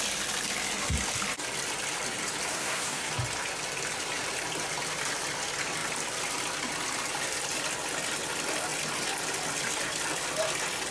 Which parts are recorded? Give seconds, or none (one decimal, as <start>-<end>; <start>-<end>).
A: 0.0-2.5; 3.1-10.9